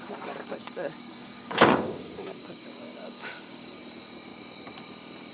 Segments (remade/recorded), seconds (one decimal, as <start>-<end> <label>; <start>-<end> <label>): 0.0-0.6 recorded; 0.6-3.8 remade; 3.8-5.3 recorded